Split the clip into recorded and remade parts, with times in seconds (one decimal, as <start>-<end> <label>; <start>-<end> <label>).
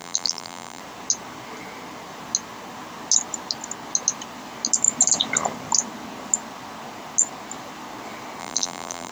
0.0-0.8 remade; 0.8-8.4 recorded; 8.4-9.1 remade